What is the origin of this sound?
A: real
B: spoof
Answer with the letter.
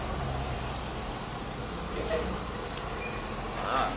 A